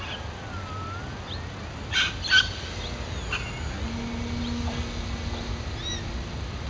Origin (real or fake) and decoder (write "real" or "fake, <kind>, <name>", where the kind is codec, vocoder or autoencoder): real